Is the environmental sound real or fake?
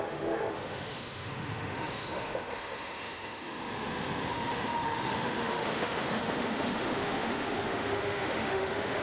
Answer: fake